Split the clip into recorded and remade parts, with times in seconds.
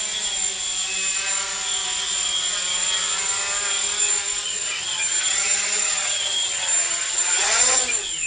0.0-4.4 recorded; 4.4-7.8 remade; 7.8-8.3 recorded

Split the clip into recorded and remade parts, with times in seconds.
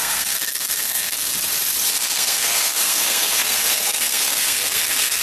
0.0-1.3 remade; 1.3-1.9 recorded; 1.9-5.2 remade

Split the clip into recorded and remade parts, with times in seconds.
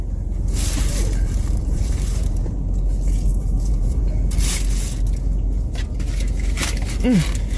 0.0-0.9 recorded; 0.9-2.6 remade; 2.6-3.3 recorded; 3.3-4.0 remade; 4.0-7.6 recorded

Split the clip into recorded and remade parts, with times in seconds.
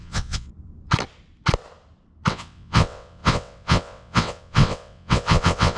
0.0-0.5 remade; 0.5-2.3 recorded; 2.3-5.8 remade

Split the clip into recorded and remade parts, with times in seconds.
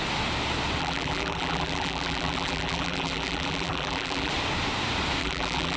0.0-0.8 recorded; 0.8-4.3 remade; 4.3-5.2 recorded; 5.2-5.8 remade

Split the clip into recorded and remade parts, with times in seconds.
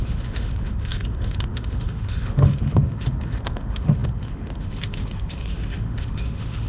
0.0-6.7 remade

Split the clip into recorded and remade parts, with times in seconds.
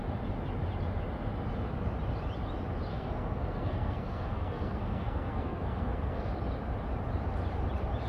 0.0-2.9 recorded; 2.9-6.3 remade; 6.3-8.1 recorded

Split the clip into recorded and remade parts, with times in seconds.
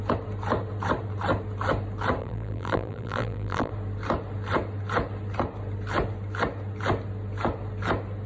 0.0-2.2 recorded; 2.2-3.7 remade; 3.7-8.3 recorded